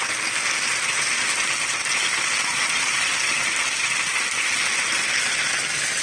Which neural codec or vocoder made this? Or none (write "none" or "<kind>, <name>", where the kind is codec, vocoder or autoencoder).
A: none